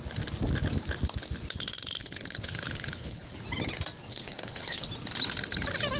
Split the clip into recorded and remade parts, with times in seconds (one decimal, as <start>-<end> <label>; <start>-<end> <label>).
0.0-2.0 recorded; 2.0-3.4 remade; 3.4-4.1 recorded; 4.1-4.9 remade; 4.9-6.0 recorded